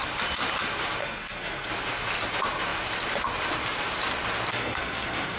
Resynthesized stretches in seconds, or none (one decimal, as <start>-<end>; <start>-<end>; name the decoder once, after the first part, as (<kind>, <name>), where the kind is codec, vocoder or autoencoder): 1.0-1.7 (codec, SNAC); 4.5-5.4